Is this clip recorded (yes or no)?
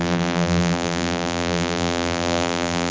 no